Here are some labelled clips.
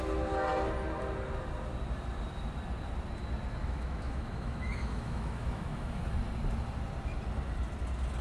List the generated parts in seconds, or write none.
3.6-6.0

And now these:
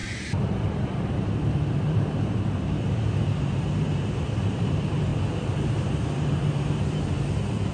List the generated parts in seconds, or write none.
0.0-5.1; 5.7-7.7

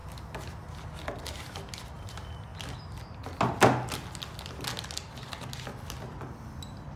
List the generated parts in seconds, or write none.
none

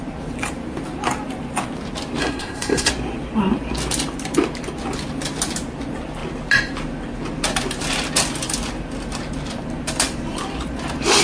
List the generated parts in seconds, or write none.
2.2-2.9

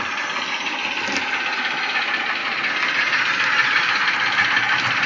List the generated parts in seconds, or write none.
none